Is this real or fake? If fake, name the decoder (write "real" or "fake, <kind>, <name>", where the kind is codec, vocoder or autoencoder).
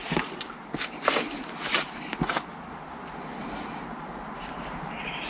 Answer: real